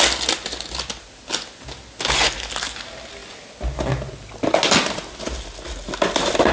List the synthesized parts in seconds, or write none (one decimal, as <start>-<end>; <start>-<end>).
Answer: none